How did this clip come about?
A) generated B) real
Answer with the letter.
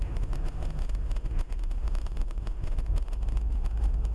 A